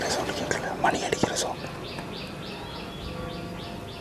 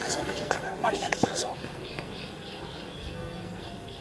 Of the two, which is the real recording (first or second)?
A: first